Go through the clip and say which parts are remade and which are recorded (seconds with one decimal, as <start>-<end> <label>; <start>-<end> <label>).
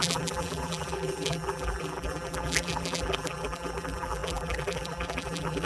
0.0-5.7 remade